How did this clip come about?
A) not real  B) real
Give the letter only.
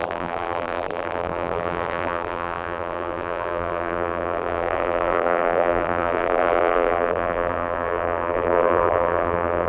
A